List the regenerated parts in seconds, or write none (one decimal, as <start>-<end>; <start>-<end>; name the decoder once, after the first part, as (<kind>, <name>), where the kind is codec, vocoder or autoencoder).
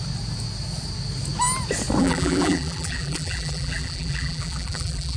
2.0-5.2 (vocoder, BigVGAN v2)